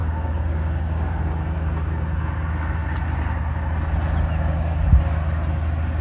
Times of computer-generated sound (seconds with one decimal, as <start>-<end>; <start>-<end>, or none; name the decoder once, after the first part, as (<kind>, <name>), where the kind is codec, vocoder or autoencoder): 0.0-1.1 (codec, DAC)